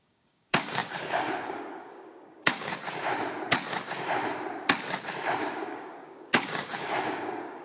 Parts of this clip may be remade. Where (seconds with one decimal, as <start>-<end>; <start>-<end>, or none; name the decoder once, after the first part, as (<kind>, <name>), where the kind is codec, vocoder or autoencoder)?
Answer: 0.0-2.7 (codec, DAC); 5.4-7.6